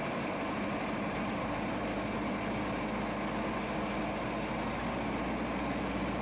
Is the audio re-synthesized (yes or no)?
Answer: no